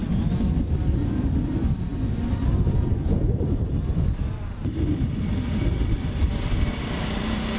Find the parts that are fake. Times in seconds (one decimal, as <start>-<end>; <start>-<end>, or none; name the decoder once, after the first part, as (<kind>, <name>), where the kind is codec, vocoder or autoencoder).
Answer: 0.0-1.9 (vocoder, BigVGAN v2); 3.0-3.7; 4.9-7.6